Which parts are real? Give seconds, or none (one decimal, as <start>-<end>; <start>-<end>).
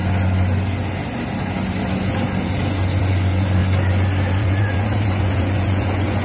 0.0-3.0; 3.6-4.4